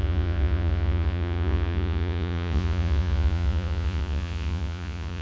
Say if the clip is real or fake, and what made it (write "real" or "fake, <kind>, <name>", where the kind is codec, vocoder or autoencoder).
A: fake, vocoder, Vocos